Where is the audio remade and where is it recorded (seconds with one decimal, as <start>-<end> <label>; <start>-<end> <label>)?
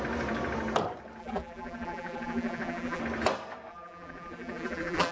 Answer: 0.0-1.2 recorded; 1.2-3.0 remade; 3.0-3.7 recorded; 3.7-5.1 remade